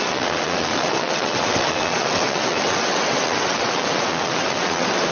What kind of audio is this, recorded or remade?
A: remade